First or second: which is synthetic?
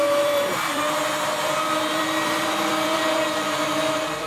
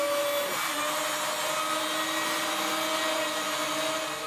first